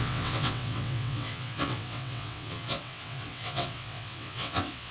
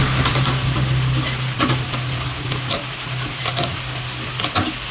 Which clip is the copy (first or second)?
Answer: first